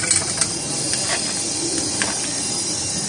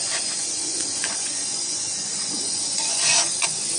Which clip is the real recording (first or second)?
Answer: first